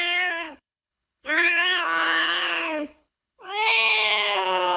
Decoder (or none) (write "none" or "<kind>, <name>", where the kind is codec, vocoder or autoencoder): codec, HILCodec